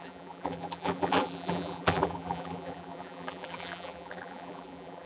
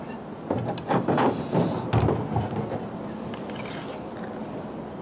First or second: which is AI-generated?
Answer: first